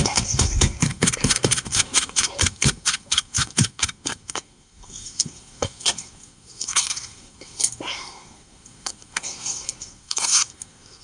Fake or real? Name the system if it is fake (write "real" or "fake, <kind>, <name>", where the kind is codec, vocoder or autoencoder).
fake, codec, SNAC